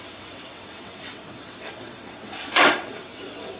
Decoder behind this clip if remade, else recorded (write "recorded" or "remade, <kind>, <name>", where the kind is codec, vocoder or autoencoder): remade, vocoder, WaveNeXt